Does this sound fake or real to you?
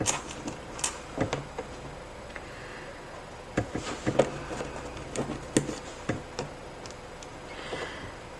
real